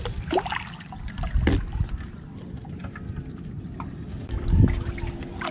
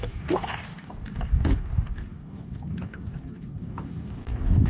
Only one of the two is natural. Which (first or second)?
first